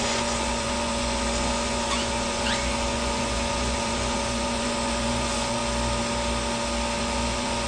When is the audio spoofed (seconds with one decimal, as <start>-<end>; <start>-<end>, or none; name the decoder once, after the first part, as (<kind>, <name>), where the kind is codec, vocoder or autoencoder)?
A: 0.0-5.6 (vocoder, Vocos); 7.0-7.7